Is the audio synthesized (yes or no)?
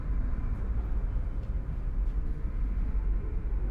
no